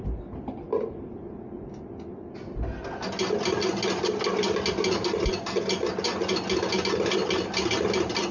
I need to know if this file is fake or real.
real